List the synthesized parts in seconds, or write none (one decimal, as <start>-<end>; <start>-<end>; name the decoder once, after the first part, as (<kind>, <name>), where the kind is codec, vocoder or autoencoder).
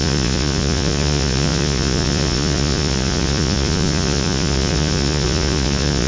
0.0-6.1 (vocoder, Vocos)